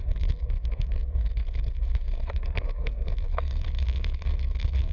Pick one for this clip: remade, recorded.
remade